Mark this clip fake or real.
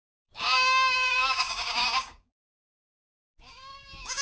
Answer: fake